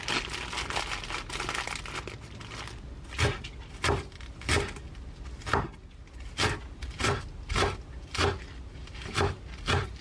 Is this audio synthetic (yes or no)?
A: no